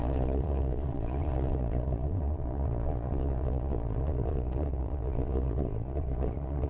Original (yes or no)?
no